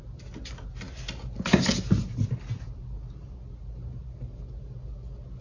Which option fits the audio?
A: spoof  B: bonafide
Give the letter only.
B